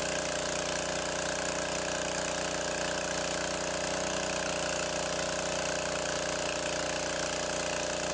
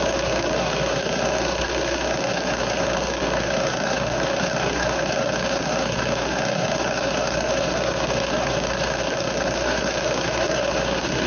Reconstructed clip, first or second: second